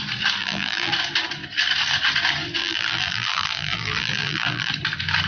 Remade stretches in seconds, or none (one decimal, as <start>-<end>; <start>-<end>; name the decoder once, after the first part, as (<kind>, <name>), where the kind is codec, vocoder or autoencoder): 0.4-0.9 (vocoder, BigVGAN v2); 2.6-4.7